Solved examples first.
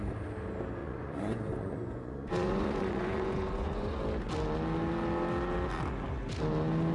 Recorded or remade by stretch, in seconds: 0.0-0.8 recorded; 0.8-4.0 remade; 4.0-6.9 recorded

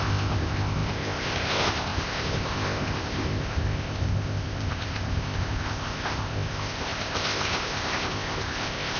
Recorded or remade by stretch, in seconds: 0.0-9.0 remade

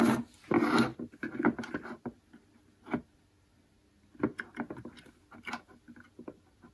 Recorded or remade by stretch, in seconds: 0.0-6.7 recorded

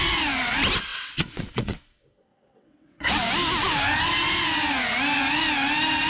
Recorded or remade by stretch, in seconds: 0.0-0.9 recorded; 0.9-1.8 remade; 1.8-2.3 recorded; 2.3-3.1 remade; 3.1-6.1 recorded

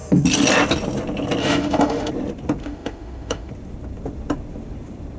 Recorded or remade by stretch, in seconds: 0.0-1.4 recorded; 1.4-2.1 remade; 2.1-2.6 recorded; 2.6-3.5 remade; 3.5-5.2 recorded